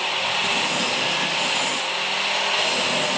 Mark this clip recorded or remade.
recorded